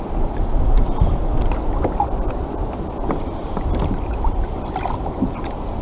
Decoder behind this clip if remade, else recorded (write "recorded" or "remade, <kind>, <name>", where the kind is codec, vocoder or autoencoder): recorded